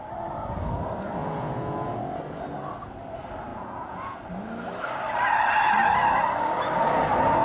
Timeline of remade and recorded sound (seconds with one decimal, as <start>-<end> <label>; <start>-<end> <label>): 0.0-1.2 recorded; 1.2-1.9 remade; 1.9-3.5 recorded; 3.5-4.2 remade; 4.2-7.4 recorded